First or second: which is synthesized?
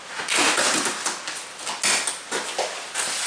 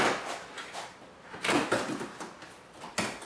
second